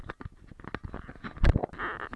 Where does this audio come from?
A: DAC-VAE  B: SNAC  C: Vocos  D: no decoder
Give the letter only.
D